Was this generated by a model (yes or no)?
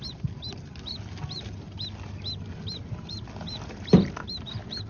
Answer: no